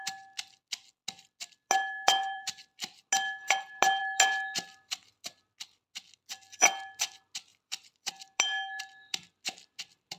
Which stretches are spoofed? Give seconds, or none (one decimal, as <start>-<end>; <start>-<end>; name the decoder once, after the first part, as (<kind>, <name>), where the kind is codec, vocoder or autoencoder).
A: 2.2-3.0 (vocoder, BigVGAN v2); 7.5-8.1